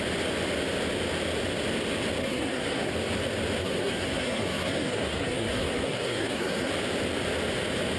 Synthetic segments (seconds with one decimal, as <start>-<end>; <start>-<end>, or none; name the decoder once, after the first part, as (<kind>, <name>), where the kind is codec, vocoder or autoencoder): 2.2-2.9 (codec, SNAC); 3.6-6.7